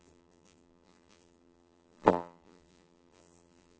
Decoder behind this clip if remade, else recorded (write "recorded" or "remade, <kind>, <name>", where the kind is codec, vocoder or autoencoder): remade, vocoder, BigVGAN v2